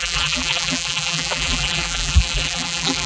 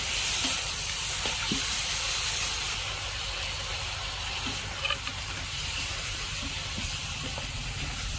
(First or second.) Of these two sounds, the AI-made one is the first